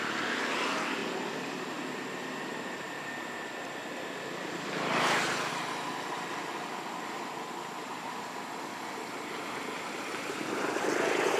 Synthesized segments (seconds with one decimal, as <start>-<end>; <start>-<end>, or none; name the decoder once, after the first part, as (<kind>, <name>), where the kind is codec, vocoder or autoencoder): 0.0-11.4 (vocoder, BigVGAN v2)